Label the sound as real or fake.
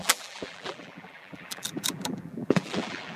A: fake